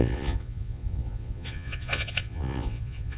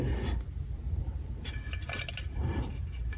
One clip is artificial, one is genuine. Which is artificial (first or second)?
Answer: first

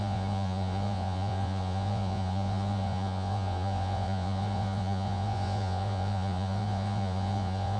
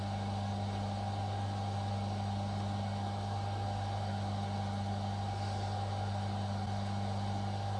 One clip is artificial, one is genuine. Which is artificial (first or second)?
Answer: first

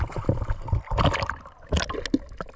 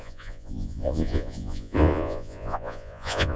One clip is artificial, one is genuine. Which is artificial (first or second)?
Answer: second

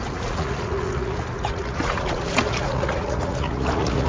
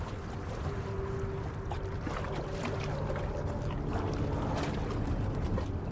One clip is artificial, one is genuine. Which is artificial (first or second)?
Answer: first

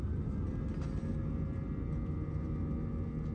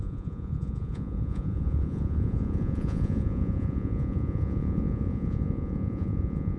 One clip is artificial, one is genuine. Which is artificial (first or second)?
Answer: second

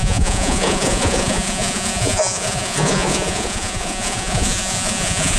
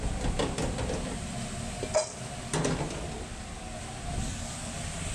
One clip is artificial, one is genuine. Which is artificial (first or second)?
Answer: first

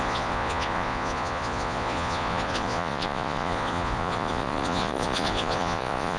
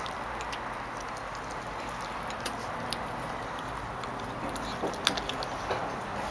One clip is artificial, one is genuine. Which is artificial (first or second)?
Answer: first